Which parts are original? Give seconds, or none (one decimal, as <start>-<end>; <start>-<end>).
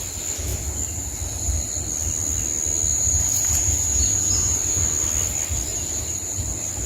0.0-2.9; 4.8-5.7; 6.4-6.9